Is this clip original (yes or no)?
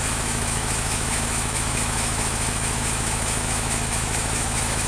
no